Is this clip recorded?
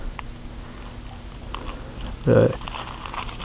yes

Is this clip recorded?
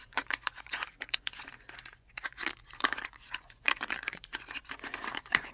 no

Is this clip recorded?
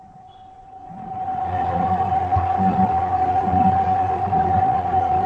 no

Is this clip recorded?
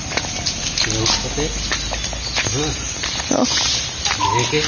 yes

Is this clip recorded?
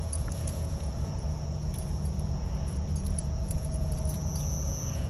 no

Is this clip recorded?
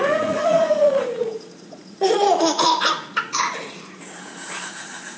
no